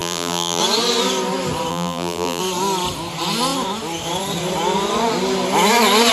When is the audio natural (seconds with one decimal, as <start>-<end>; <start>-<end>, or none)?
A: 0.6-1.7; 2.4-6.1